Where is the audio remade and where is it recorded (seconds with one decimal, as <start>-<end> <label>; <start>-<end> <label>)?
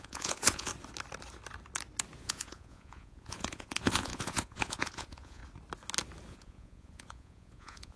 0.0-0.7 remade; 0.7-2.2 recorded; 2.2-5.4 remade; 5.4-6.3 recorded; 6.3-8.0 remade